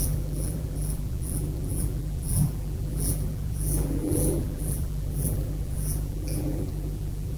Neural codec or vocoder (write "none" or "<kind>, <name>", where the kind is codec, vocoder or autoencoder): vocoder, BigVGAN v2